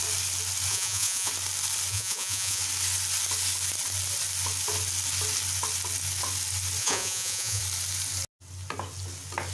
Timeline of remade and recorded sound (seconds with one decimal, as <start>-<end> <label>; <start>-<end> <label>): 0.0-0.7 recorded; 0.7-1.3 remade; 1.3-1.9 recorded; 1.9-2.6 remade; 2.6-6.8 recorded; 6.8-7.6 remade; 7.6-9.5 recorded